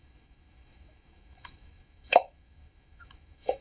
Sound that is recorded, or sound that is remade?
remade